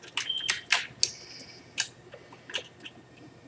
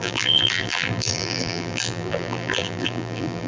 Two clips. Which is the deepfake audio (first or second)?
second